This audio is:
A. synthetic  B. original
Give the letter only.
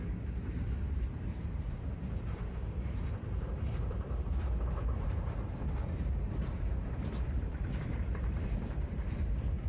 A